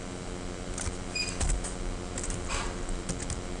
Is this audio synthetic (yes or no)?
yes